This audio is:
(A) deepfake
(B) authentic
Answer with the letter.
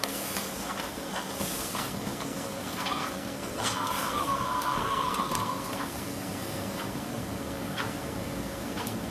A